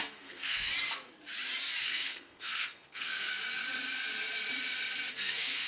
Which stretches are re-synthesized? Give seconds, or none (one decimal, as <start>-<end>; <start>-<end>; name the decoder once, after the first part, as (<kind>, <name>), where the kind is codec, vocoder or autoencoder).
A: 0.0-0.7 (codec, SNAC); 1.8-3.3; 5.1-5.7